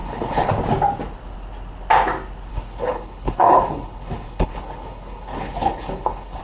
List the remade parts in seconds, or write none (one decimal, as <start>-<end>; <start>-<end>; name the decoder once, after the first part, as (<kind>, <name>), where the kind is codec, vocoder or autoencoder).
0.0-0.5 (codec, HILCodec); 2.5-6.4